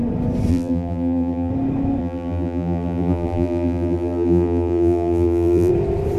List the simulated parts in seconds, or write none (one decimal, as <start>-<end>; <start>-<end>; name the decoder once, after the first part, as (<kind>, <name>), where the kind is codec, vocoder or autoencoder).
0.5-1.5 (vocoder, BigVGAN v2); 2.0-5.7

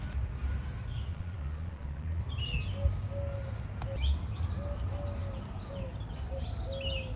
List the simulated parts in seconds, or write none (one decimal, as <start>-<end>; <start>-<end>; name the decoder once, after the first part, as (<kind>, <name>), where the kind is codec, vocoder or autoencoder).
1.1-2.2 (vocoder, Vocos)

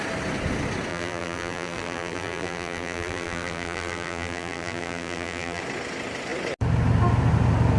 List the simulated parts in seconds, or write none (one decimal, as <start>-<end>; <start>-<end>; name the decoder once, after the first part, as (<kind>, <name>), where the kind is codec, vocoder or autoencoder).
0.9-5.6 (vocoder, BigVGAN v2)

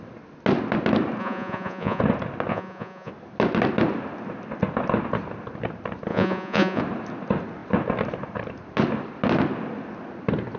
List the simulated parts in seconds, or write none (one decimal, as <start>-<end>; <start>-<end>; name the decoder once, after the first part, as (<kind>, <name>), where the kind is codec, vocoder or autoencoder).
1.2-2.0 (vocoder, Vocos); 2.5-3.1; 6.1-6.8

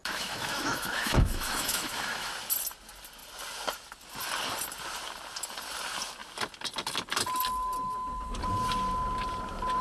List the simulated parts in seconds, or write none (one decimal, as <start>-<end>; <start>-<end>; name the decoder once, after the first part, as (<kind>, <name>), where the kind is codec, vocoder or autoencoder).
0.0-2.3 (autoencoder, DAC-VAE)